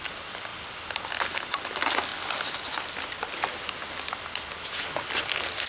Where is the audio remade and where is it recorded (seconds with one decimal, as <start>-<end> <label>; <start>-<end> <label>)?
0.0-5.7 recorded